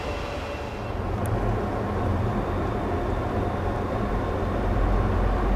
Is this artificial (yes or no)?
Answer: no